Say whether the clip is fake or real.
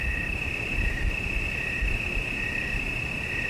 real